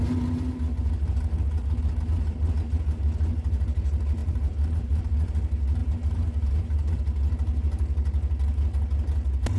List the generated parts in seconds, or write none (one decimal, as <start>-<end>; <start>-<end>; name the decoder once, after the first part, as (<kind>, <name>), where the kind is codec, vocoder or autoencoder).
4.2-5.0 (vocoder, BigVGAN v2); 5.8-6.9